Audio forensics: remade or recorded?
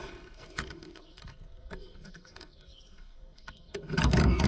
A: remade